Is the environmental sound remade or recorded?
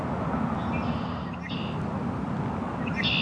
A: recorded